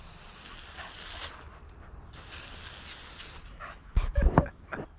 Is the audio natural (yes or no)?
yes